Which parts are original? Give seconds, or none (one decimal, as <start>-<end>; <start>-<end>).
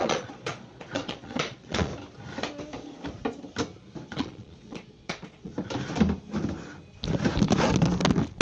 1.9-4.1; 5.5-8.4